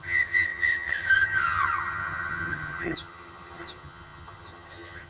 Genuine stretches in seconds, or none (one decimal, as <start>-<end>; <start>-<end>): none